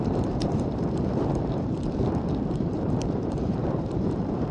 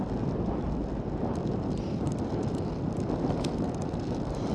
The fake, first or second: first